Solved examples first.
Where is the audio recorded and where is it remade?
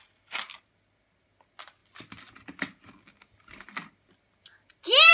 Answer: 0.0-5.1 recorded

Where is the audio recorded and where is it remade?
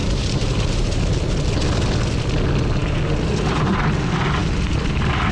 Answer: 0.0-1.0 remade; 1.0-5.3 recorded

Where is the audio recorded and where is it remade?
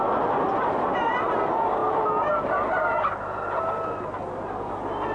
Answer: 0.0-5.1 recorded